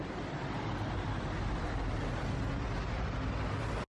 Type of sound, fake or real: real